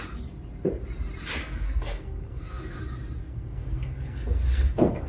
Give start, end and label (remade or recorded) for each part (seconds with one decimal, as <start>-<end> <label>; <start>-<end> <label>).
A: 0.0-1.4 recorded; 1.4-2.8 remade; 2.8-3.2 recorded; 3.2-5.1 remade